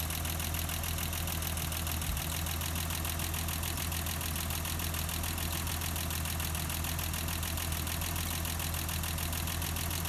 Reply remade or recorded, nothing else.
recorded